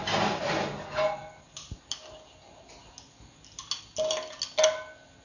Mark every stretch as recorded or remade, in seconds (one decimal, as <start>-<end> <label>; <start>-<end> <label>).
0.0-5.2 recorded